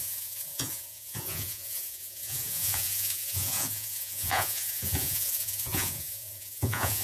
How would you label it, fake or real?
fake